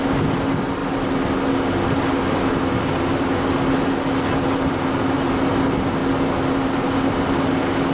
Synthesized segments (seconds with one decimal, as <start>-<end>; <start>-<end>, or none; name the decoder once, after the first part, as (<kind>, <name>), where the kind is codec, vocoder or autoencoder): none